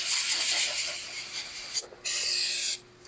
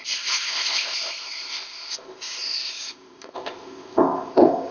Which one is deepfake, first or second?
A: second